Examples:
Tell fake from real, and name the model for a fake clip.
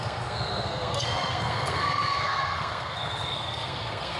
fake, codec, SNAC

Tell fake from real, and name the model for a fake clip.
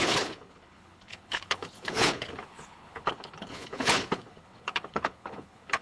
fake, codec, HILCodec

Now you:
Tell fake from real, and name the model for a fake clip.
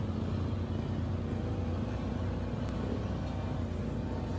real